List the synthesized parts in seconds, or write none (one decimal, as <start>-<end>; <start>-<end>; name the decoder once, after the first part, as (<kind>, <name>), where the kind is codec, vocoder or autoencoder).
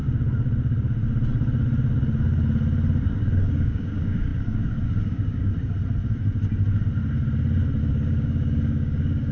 3.0-5.5 (codec, DAC); 7.8-9.3